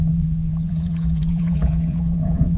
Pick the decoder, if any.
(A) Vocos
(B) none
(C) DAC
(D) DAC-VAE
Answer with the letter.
A